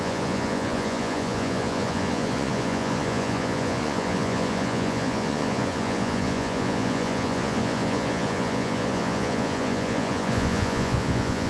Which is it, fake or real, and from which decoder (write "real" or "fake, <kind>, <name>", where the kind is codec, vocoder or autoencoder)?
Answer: fake, vocoder, Vocos